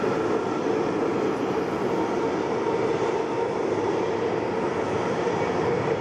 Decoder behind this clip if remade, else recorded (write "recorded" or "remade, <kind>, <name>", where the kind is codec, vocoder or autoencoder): recorded